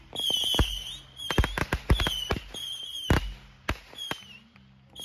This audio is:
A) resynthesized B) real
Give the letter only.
B